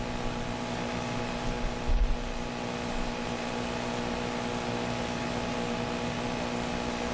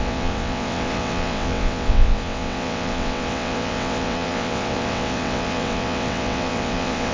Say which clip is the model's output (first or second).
second